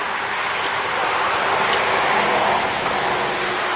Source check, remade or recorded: recorded